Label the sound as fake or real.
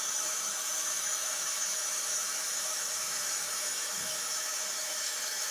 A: fake